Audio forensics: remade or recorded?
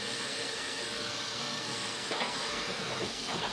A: remade